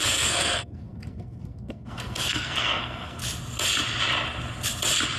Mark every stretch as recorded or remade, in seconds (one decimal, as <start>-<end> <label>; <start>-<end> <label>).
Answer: 0.0-3.2 remade; 3.2-5.2 recorded